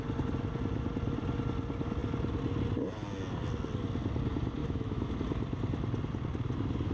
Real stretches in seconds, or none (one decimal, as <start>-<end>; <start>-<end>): 0.0-4.6; 5.1-6.9